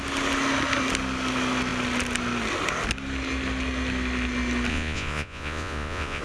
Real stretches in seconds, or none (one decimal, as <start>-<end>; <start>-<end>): 0.0-4.7